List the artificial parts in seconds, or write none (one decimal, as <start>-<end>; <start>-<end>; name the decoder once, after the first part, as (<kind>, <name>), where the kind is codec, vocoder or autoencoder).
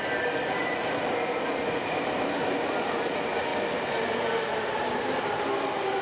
none